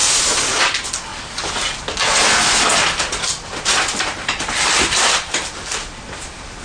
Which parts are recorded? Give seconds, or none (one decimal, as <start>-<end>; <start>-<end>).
0.0-6.6